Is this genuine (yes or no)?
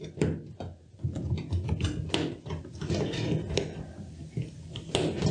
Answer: yes